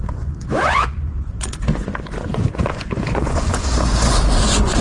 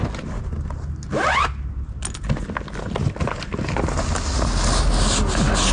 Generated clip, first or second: first